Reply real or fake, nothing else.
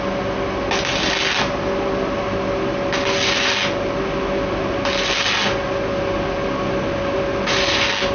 real